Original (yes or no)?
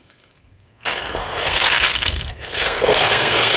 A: no